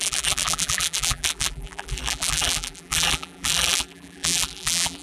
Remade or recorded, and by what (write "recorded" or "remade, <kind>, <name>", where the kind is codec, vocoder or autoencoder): remade, vocoder, BigVGAN v2